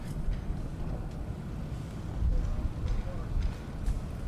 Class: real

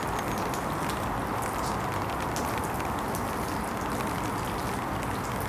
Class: real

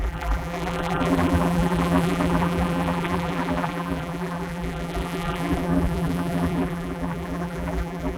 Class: fake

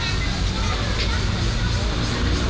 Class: real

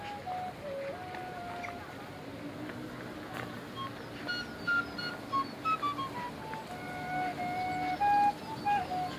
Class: real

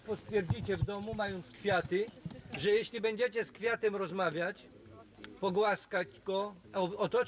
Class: real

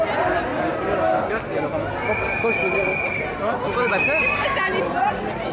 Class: real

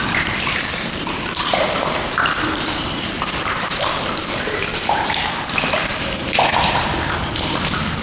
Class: fake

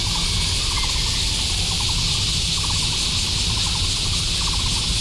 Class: real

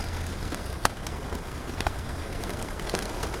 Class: fake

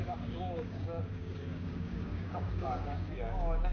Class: fake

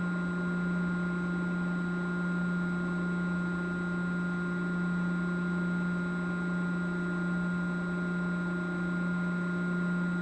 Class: real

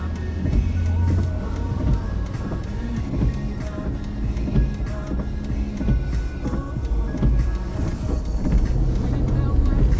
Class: real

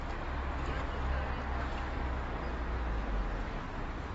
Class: real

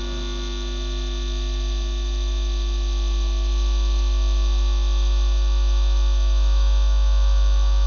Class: real